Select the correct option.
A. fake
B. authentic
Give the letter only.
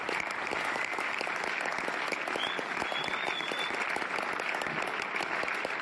B